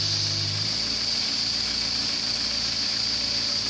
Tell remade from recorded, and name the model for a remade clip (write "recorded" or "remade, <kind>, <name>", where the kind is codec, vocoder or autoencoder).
recorded